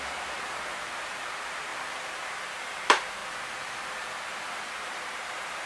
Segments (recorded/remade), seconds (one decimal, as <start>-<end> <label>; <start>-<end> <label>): 0.0-1.7 remade; 1.7-2.6 recorded; 2.6-3.2 remade; 3.2-4.7 recorded; 4.7-5.7 remade